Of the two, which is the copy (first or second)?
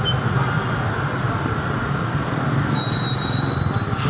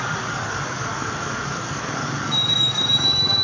second